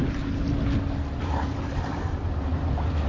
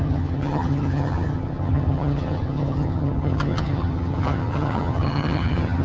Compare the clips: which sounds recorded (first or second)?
first